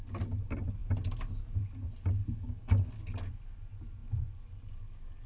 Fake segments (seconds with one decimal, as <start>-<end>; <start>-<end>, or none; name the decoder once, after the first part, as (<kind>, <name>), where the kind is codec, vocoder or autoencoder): 2.2-2.9 (codec, DAC)